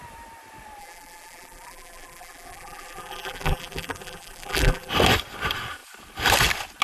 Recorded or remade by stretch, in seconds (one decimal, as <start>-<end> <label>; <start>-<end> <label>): 0.0-0.8 recorded; 0.8-4.9 remade; 4.9-6.8 recorded